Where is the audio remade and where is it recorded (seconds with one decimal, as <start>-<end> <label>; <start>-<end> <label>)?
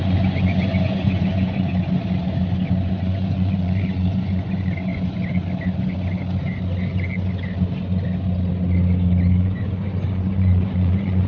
0.0-1.7 remade; 1.7-2.9 recorded; 2.9-4.9 remade; 4.9-9.4 recorded; 9.4-11.3 remade